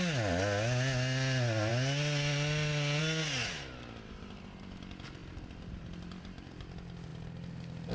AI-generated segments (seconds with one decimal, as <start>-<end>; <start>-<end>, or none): none